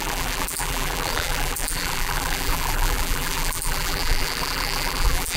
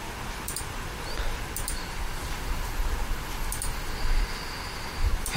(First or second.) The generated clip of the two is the first